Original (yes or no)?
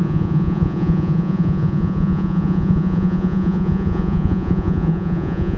no